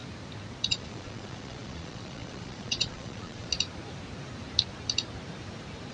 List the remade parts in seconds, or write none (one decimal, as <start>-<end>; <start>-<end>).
0.7-3.5

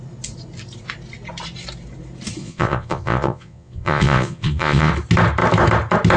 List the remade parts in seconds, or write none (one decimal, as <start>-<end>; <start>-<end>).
2.4-4.9

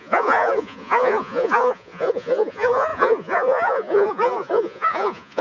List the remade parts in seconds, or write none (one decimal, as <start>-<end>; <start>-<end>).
0.0-5.4

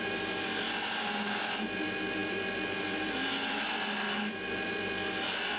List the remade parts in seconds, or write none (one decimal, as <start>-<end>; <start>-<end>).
none

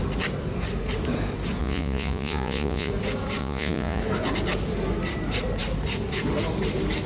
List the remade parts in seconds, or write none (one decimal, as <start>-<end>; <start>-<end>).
1.6-2.9; 3.4-4.0